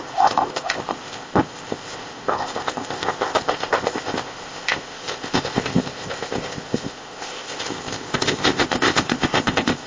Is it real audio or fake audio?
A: fake